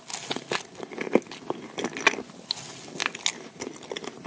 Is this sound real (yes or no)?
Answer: yes